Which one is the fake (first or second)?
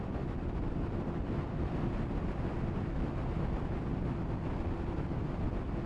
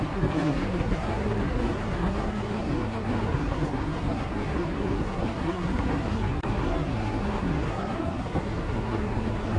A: second